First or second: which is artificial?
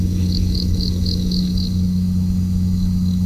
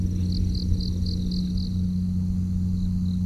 first